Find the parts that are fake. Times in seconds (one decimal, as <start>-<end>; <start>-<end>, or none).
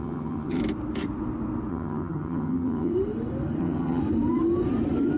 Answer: 0.0-0.6; 1.7-2.9; 3.6-4.0